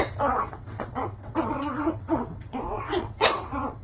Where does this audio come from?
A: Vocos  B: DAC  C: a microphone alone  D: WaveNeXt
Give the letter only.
D